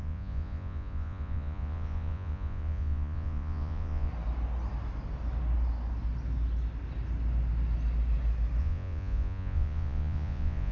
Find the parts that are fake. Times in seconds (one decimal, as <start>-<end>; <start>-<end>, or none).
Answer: 0.0-4.1; 8.6-10.7

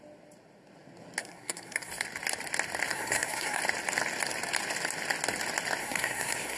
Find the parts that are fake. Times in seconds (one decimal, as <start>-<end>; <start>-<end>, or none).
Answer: 1.2-1.9; 2.9-3.6; 5.8-6.6

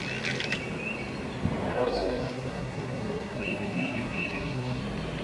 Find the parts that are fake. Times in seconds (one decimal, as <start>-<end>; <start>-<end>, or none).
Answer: 1.7-4.8

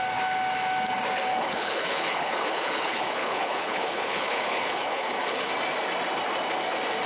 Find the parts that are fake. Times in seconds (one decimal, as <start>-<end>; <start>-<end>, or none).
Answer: 1.3-5.5

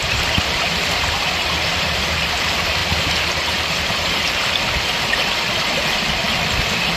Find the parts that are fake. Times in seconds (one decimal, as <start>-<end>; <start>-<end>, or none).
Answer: 1.7-2.4; 2.8-4.6